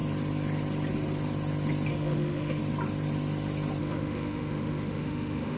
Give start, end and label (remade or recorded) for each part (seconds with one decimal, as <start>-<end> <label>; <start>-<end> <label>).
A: 0.0-1.9 recorded; 1.9-2.6 remade; 2.6-3.8 recorded; 3.8-5.6 remade